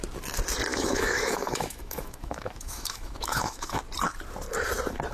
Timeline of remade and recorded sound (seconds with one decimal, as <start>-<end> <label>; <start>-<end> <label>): 0.0-0.7 recorded; 0.7-3.8 remade; 3.8-5.1 recorded